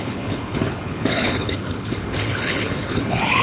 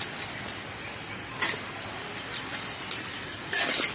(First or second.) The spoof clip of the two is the first